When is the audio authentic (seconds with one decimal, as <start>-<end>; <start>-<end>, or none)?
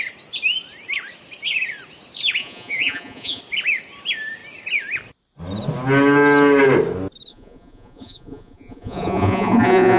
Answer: 0.0-2.4; 3.4-7.3